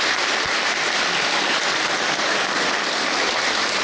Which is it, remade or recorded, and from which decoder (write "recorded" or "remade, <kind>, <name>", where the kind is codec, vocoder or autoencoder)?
remade, vocoder, BigVGAN v2